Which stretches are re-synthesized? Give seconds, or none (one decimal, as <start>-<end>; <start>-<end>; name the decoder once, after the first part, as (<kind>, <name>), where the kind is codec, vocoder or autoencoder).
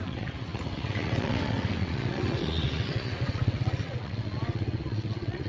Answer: 0.0-5.5 (vocoder, WaveNeXt)